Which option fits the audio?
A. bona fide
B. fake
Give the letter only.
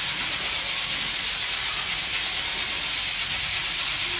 A